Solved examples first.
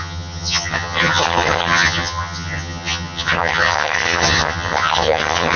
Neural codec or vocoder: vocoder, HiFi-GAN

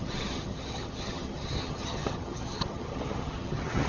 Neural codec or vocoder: vocoder, HiFi-GAN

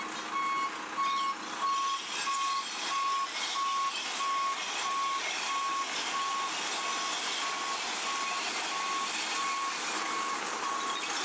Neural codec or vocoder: none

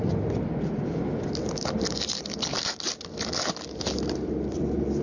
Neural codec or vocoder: none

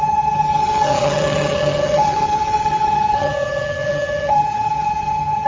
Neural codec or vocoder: vocoder, HiFi-GAN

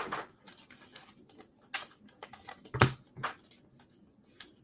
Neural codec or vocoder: none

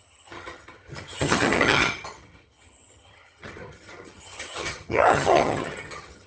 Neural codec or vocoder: vocoder, HiFi-GAN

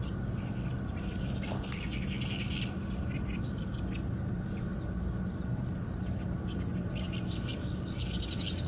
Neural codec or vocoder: none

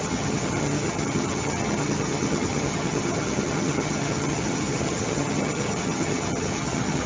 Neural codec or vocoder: vocoder, HiFi-GAN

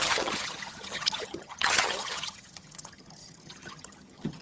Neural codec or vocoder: vocoder, HiFi-GAN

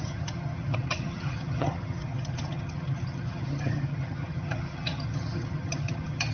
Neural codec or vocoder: vocoder, HiFi-GAN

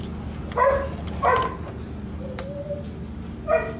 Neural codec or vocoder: none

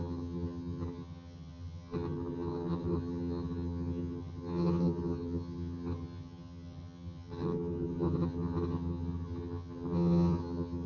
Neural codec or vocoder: vocoder, HiFi-GAN